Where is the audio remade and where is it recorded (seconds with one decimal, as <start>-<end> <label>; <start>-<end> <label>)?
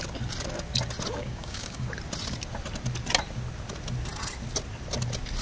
0.0-1.2 recorded; 1.2-1.9 remade; 1.9-5.4 recorded